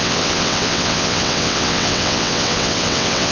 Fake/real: fake